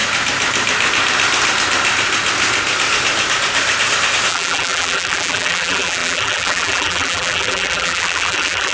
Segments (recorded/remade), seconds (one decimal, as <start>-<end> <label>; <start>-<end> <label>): 0.0-4.3 recorded; 4.3-8.7 remade